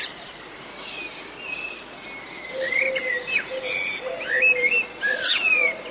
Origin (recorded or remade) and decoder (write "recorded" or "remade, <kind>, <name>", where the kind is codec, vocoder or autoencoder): recorded